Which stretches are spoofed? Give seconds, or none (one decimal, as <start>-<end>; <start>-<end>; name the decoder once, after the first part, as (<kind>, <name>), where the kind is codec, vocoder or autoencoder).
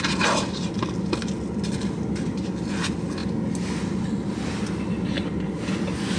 none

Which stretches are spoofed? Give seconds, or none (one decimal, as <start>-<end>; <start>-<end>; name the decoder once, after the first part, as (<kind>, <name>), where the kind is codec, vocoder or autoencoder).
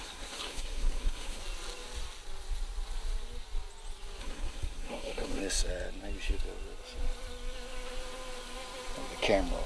0.0-1.4 (codec, SNAC); 4.2-5.4